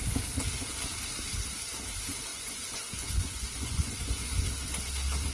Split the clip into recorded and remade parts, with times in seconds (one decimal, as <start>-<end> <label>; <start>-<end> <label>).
0.0-2.3 recorded; 2.3-4.4 remade; 4.4-5.3 recorded